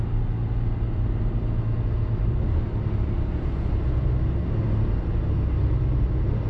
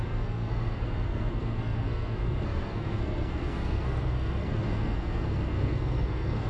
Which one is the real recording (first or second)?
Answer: first